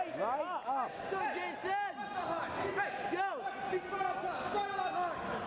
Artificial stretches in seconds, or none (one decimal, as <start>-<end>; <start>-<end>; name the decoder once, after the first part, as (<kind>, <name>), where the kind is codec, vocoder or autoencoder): none